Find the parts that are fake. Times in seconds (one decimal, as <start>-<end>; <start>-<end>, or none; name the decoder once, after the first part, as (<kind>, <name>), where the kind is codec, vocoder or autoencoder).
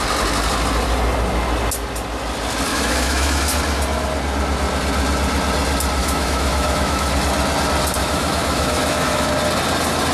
2.7-3.4 (autoencoder, DAC-VAE); 6.0-7.1; 8.0-9.3